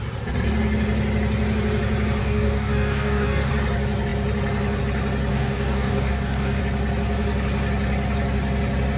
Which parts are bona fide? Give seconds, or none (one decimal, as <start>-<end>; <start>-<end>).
0.0-2.2; 3.5-5.3; 6.6-9.0